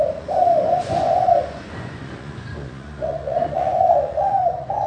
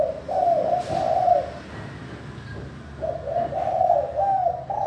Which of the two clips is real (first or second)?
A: second